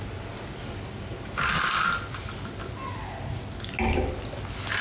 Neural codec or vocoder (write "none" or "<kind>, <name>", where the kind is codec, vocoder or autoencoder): none